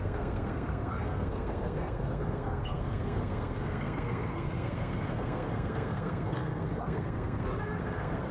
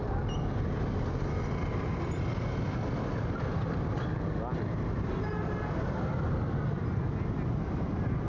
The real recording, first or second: second